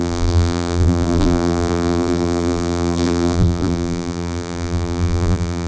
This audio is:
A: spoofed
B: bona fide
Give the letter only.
A